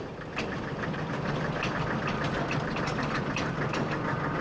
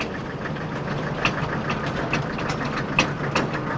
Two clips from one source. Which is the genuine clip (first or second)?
second